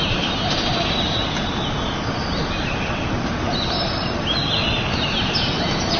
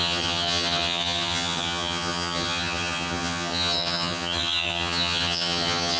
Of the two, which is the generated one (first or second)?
second